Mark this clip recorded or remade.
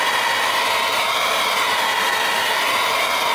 recorded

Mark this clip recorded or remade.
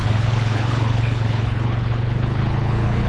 remade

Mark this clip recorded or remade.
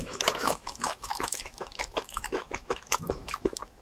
remade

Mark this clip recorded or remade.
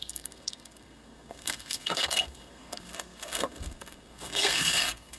remade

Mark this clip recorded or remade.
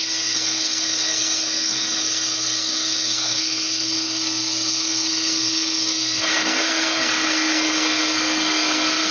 remade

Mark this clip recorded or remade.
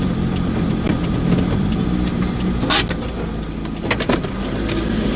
recorded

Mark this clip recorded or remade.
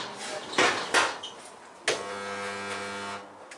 recorded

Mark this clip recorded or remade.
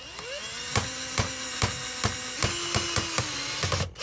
recorded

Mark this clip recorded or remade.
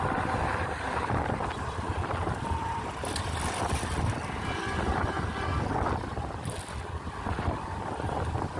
recorded